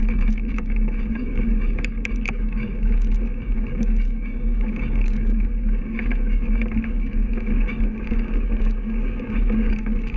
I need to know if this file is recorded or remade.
remade